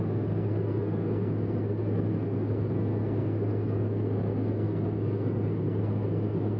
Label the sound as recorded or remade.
remade